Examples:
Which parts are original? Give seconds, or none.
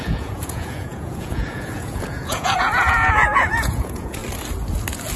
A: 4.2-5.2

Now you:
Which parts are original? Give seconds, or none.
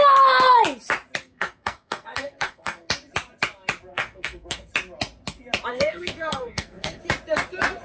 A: 0.0-1.2; 2.9-3.9; 4.7-5.7; 7.0-7.8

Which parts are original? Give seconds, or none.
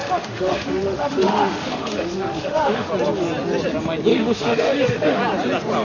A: 2.9-4.1; 5.2-5.8